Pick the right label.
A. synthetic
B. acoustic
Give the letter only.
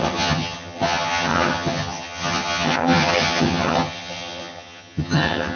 A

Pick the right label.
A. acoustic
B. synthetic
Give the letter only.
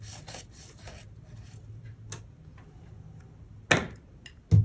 A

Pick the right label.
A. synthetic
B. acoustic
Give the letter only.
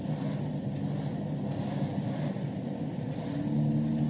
B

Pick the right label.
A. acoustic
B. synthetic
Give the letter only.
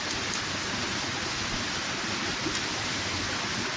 A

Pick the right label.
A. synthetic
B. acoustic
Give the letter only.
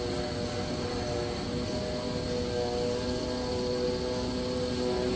B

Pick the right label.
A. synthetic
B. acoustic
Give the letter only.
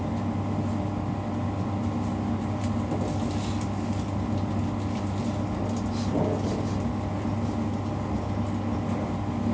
B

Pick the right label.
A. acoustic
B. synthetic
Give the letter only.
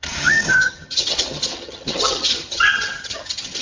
B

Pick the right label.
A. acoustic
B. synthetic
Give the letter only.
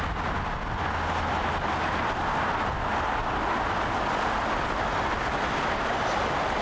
A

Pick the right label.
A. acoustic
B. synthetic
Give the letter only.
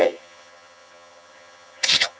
B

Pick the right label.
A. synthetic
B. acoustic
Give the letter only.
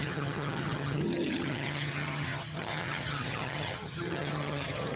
A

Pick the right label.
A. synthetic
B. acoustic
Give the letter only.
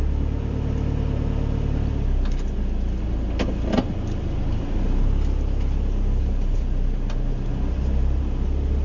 B